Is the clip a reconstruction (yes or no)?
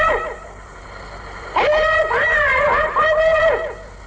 no